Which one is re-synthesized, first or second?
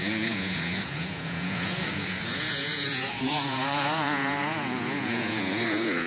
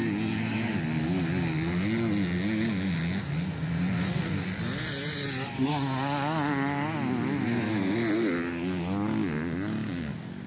first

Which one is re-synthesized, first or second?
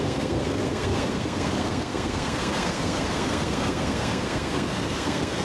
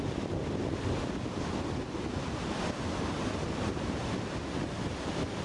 first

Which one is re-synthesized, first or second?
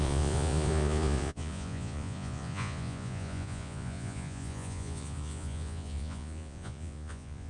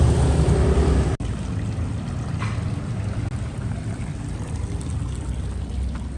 first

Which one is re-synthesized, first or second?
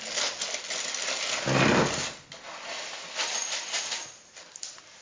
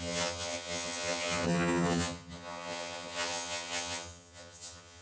second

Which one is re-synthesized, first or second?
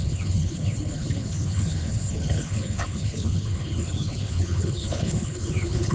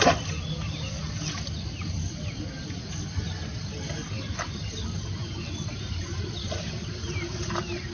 first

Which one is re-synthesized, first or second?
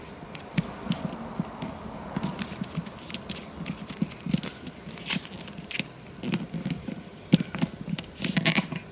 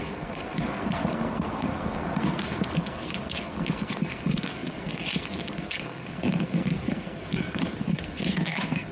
second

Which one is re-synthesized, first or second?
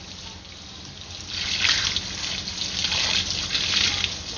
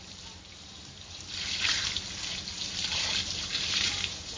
second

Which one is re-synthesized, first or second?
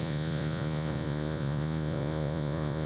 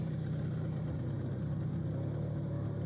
first